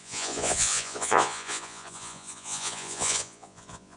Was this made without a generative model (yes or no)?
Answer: no